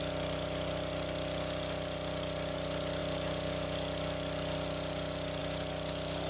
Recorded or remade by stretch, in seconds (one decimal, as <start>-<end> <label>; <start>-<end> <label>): 0.0-6.3 recorded